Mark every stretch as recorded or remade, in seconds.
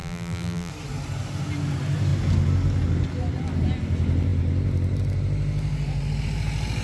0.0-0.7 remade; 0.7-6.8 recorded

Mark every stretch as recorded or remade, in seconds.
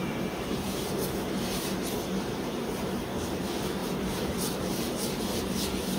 0.0-3.4 remade; 3.4-3.8 recorded; 3.8-5.2 remade; 5.2-6.0 recorded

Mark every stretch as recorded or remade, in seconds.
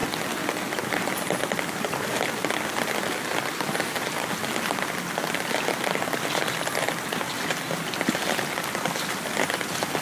0.0-10.0 recorded